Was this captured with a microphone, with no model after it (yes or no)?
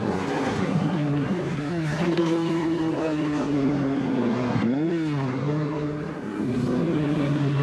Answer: no